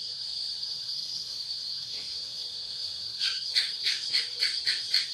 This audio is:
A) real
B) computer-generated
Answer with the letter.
B